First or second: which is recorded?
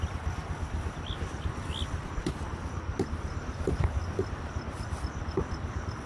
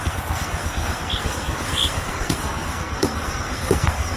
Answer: first